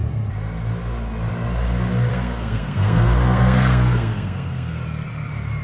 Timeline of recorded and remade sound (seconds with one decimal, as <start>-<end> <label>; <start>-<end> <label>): 0.0-2.1 recorded; 2.1-4.8 remade; 4.8-5.6 recorded